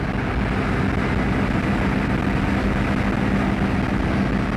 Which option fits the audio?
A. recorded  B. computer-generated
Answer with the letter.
A